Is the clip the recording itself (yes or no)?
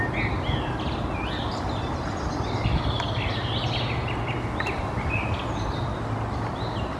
yes